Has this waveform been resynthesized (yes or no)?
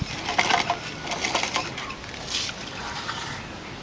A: no